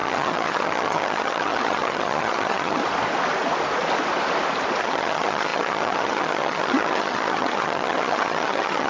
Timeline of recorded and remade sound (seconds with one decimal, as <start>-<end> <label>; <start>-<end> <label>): 0.0-2.8 remade; 2.8-4.8 recorded; 4.8-8.9 remade